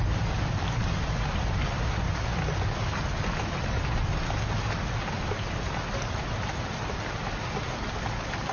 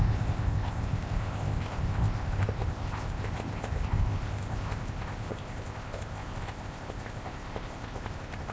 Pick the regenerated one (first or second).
second